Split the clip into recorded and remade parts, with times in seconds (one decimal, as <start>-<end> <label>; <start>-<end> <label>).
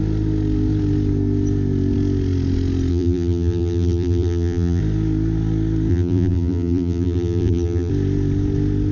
0.0-2.9 recorded; 2.9-4.8 remade; 4.8-5.9 recorded; 5.9-7.9 remade; 7.9-8.9 recorded